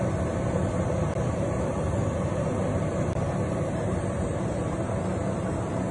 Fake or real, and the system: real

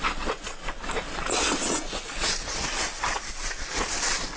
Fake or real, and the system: fake, vocoder, Vocos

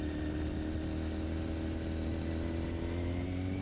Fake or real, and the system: real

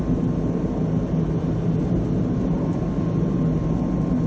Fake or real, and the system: real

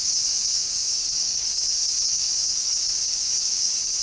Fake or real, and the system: fake, codec, DAC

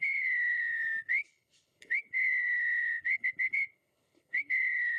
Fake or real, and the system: fake, codec, HILCodec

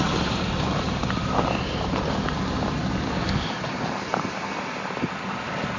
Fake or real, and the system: real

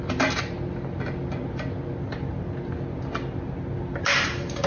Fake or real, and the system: real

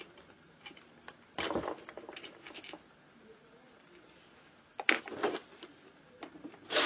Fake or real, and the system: real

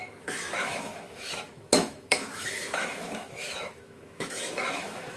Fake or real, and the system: fake, autoencoder, DAC-VAE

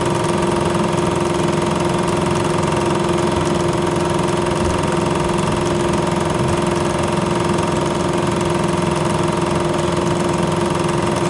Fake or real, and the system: real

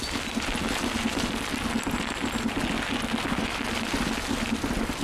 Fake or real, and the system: real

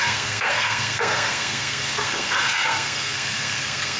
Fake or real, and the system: fake, codec, SNAC